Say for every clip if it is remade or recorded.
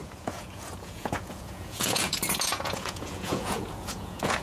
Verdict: remade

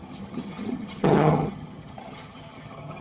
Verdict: remade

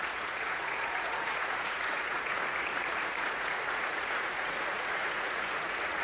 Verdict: remade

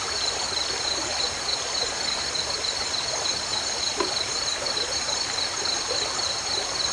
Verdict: recorded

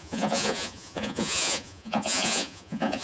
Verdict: remade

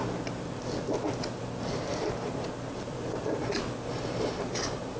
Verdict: recorded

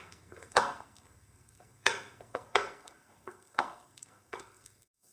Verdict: remade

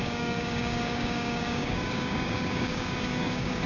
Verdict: remade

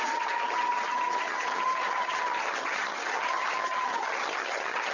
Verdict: remade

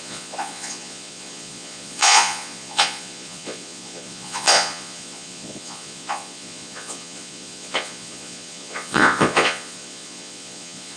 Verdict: remade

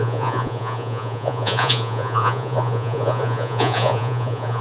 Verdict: remade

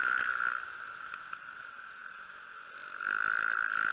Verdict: recorded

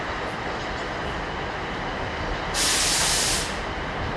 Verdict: recorded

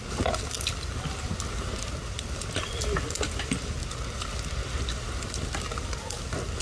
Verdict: recorded